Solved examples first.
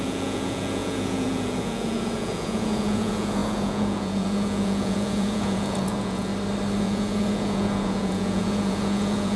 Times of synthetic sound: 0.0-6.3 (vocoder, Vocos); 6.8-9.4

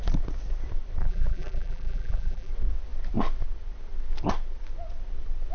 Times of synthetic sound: 1.0-2.5 (vocoder, BigVGAN v2)

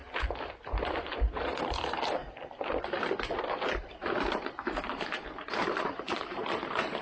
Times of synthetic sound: 0.0-2.2 (vocoder, BigVGAN v2); 3.9-7.0